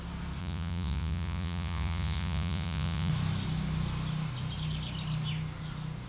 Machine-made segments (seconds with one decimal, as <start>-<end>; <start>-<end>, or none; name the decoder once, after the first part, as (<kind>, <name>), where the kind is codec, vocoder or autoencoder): 0.4-3.1 (vocoder, Vocos)